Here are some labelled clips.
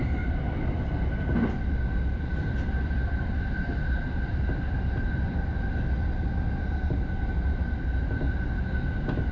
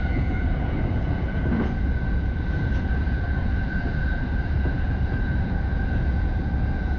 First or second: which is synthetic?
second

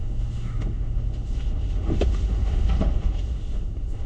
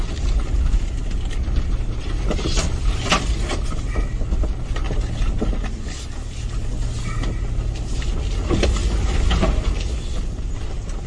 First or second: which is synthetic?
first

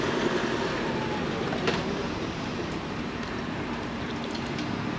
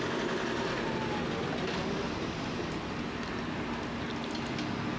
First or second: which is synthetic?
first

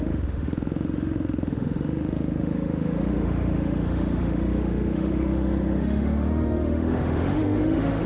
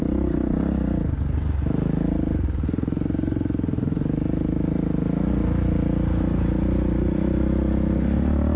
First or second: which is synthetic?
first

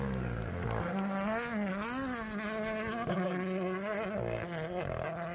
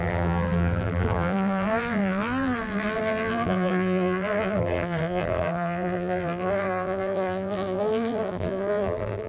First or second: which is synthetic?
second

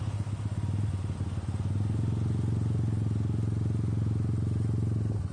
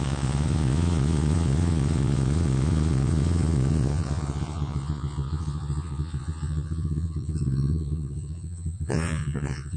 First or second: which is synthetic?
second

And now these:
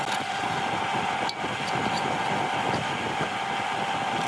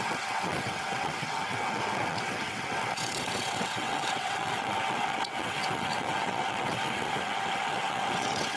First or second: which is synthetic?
second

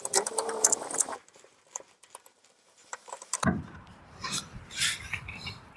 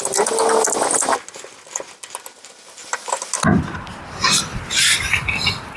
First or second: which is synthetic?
first